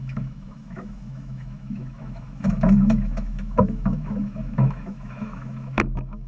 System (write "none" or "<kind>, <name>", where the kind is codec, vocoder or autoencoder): autoencoder, DAC-VAE